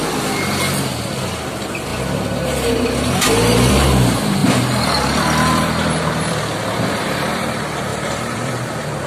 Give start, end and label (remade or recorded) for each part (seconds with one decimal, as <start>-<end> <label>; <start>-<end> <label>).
0.0-4.4 recorded; 4.4-6.4 remade; 6.4-7.9 recorded; 7.9-8.5 remade; 8.5-9.1 recorded

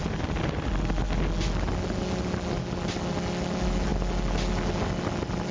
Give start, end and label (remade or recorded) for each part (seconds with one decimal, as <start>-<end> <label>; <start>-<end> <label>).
0.0-5.5 recorded

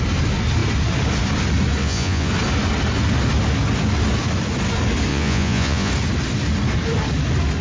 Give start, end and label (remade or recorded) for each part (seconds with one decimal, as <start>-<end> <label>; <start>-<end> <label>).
0.0-1.8 recorded; 1.8-2.3 remade; 2.3-5.1 recorded; 5.1-5.9 remade; 5.9-7.6 recorded

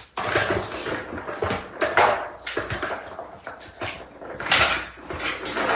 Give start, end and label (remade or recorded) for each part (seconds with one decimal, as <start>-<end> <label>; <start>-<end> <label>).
0.0-5.8 recorded